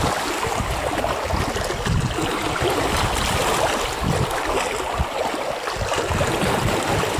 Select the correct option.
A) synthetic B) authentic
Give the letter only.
B